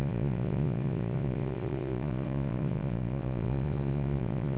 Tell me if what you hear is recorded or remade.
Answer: remade